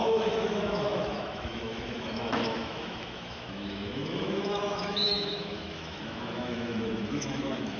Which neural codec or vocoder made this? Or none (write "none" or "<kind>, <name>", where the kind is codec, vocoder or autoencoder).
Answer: autoencoder, DAC-VAE